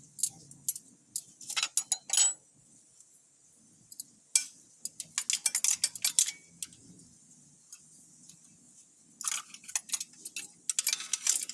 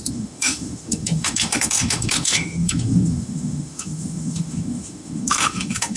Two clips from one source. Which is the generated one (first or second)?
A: second